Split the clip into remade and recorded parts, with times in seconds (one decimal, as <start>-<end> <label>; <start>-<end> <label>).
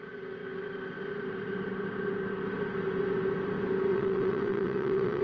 0.0-3.9 recorded; 3.9-5.2 remade